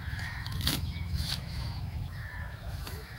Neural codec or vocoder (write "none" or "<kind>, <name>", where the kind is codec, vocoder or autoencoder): autoencoder, DAC-VAE